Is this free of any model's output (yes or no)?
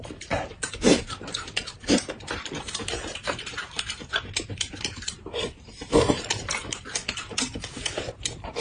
no